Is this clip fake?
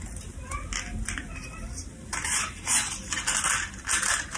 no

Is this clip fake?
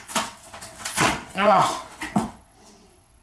yes